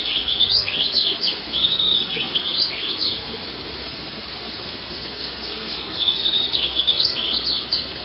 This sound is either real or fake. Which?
fake